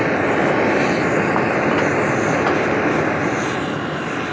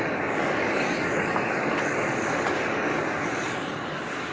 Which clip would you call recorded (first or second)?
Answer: first